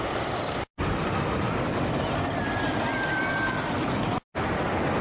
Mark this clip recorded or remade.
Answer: recorded